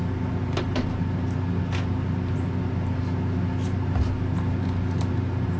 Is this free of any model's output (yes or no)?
yes